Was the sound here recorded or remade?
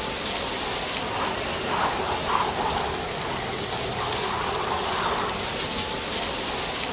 recorded